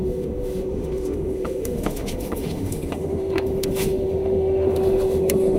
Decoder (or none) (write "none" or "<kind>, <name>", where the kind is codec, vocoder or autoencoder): autoencoder, DAC-VAE